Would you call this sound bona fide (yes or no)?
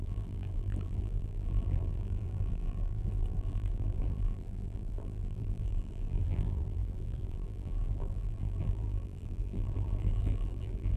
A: no